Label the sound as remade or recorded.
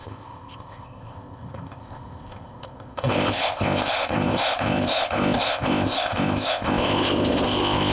remade